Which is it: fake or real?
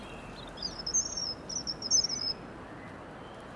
real